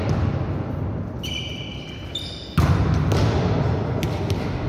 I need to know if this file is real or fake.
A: real